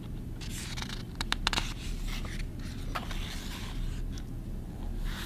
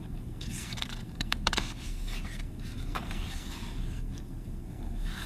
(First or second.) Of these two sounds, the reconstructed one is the second